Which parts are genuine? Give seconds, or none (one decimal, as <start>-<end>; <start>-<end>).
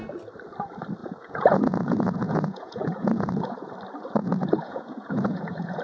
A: 0.0-1.0; 3.7-4.2